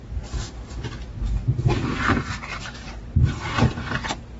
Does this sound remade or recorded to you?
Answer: recorded